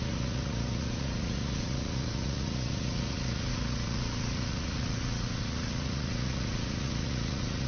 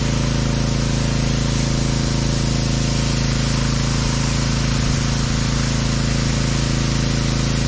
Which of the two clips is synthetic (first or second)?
first